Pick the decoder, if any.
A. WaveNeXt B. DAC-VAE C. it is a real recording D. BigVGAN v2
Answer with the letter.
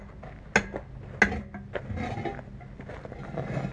C